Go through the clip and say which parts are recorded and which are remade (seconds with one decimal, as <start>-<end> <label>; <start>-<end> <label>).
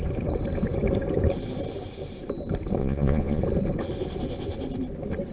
0.0-2.8 recorded; 2.8-3.4 remade; 3.4-5.3 recorded